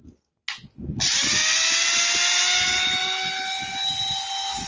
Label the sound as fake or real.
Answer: real